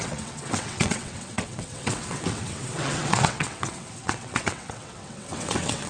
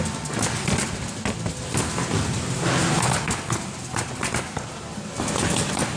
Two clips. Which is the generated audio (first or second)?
first